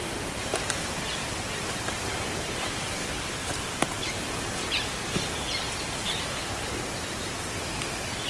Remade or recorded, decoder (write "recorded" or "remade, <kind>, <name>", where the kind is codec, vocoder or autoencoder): recorded